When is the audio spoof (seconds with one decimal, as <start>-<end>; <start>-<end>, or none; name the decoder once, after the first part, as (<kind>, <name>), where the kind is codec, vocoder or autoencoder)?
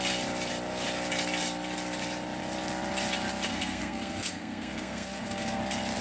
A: 3.5-5.6 (codec, SNAC)